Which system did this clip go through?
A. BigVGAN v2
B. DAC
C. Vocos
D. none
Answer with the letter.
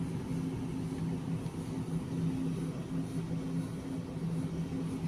D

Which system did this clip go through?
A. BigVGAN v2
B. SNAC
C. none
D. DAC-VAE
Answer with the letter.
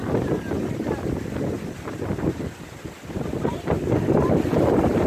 C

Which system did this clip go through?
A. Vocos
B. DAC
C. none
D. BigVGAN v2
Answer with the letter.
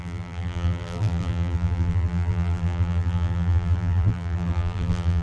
D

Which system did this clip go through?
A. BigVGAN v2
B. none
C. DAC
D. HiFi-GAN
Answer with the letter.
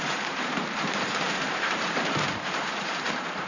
A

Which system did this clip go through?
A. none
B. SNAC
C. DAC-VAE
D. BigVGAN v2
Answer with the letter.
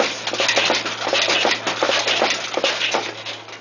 A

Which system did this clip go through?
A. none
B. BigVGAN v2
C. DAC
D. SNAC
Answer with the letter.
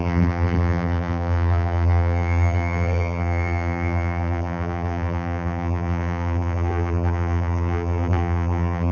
B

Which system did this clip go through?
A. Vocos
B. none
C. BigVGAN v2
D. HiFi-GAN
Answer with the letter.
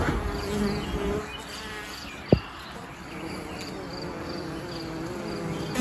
B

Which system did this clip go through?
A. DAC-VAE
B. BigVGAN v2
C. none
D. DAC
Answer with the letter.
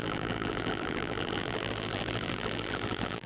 B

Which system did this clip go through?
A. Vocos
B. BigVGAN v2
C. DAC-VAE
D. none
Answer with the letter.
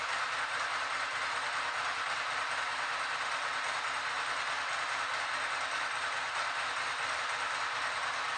D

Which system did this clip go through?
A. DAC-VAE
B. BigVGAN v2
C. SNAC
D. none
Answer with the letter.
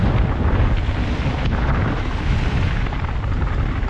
D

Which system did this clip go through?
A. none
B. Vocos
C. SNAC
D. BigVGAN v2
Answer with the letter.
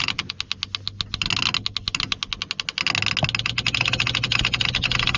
A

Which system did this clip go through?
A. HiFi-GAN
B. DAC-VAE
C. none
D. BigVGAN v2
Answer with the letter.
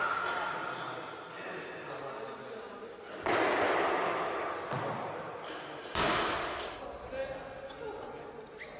C